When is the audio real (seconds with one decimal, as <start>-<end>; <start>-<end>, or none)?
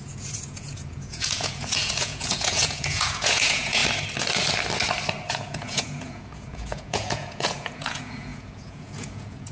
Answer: 3.8-5.3